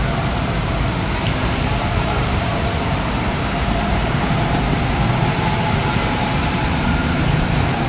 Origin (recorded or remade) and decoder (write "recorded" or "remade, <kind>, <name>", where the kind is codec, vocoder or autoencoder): remade, vocoder, BigVGAN v2